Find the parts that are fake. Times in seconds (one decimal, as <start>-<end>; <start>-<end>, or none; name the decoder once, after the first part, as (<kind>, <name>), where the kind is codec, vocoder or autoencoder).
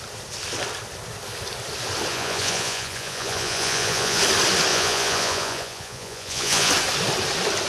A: 2.1-4.2 (vocoder, Vocos); 4.7-6.7